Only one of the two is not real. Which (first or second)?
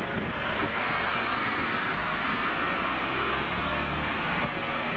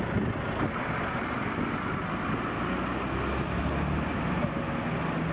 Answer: first